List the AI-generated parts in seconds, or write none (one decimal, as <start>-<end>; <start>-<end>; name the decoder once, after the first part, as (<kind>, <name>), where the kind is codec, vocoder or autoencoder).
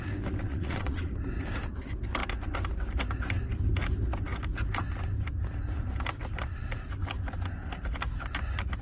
0.4-1.1 (vocoder, WaveNeXt)